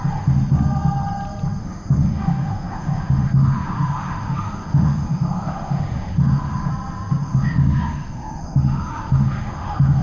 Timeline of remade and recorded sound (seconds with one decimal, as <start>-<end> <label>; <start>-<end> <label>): 0.0-1.6 recorded; 1.6-6.7 remade; 6.7-7.2 recorded; 7.2-10.0 remade